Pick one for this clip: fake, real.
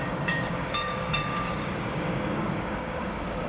fake